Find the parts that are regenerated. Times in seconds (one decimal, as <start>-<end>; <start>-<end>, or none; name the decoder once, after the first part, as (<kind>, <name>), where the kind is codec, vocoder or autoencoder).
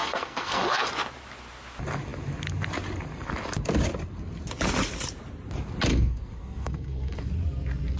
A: 0.0-0.9 (codec, SNAC); 5.9-7.3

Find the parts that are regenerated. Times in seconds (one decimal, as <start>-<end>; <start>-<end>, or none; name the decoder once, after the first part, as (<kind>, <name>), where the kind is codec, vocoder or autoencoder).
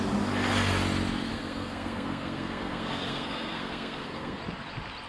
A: 1.3-4.4 (codec, SNAC)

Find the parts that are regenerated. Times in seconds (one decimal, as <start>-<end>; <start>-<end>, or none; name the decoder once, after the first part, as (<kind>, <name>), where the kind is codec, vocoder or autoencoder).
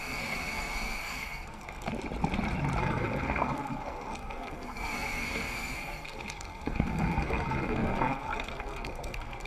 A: 0.0-1.9 (codec, SNAC); 2.8-9.5